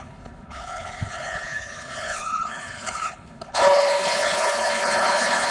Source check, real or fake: fake